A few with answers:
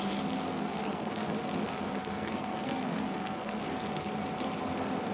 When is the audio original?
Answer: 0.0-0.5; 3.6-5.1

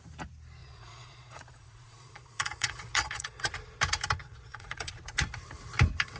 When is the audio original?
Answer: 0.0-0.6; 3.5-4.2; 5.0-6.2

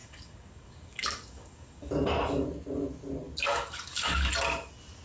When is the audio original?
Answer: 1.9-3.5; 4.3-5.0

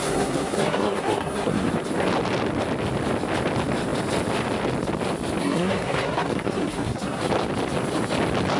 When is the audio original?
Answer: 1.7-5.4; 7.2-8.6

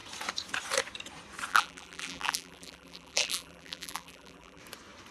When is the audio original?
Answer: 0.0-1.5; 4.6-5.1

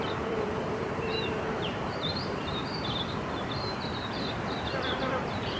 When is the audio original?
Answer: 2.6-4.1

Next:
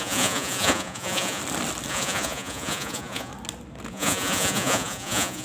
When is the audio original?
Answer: 1.4-1.9; 3.3-3.9

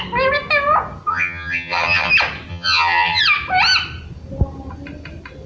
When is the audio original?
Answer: 0.0-1.1; 2.1-2.5; 3.2-5.5